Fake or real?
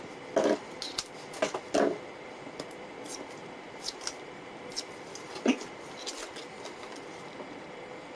real